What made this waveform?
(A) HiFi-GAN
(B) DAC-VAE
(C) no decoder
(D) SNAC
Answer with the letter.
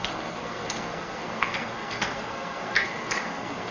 D